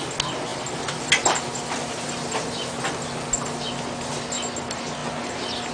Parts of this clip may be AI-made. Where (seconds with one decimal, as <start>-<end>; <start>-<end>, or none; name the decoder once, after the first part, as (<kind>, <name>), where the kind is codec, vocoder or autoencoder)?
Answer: none